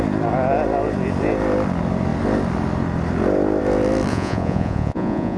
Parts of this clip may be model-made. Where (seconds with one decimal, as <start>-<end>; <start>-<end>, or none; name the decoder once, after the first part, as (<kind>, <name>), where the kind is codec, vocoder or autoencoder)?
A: 4.1-5.4 (vocoder, Vocos)